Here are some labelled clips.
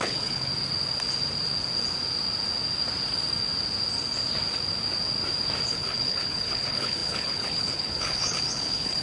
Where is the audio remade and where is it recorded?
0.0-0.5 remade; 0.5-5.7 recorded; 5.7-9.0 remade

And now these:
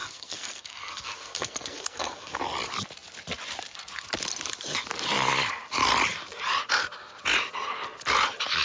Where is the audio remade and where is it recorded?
0.0-2.4 remade; 2.4-8.6 recorded

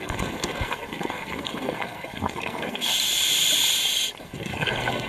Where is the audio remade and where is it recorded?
0.0-2.9 remade; 2.9-4.2 recorded; 4.2-5.1 remade

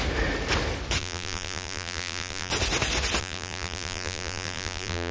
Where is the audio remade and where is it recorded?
0.0-1.0 recorded; 1.0-2.5 remade; 2.5-3.2 recorded; 3.2-5.1 remade

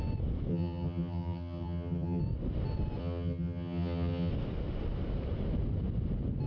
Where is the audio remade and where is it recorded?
0.0-0.5 recorded; 0.5-2.2 remade; 2.2-3.0 recorded; 3.0-4.3 remade; 4.3-6.5 recorded